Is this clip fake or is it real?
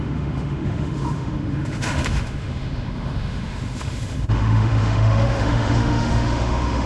fake